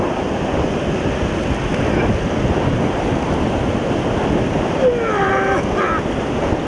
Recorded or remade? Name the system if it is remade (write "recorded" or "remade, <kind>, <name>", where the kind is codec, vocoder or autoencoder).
recorded